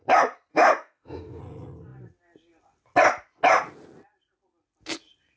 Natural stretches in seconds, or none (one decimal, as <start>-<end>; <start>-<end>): 0.0-0.5; 1.4-5.4